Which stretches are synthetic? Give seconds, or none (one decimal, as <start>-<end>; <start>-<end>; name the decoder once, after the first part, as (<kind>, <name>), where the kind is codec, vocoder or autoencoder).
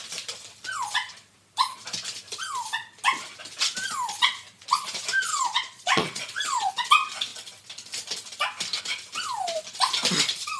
5.3-6.7 (vocoder, Vocos)